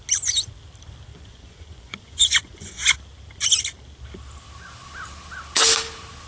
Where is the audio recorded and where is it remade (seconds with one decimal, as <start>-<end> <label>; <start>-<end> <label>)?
0.0-1.1 recorded; 1.1-2.8 remade; 2.8-6.3 recorded